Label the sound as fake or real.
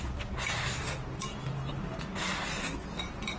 real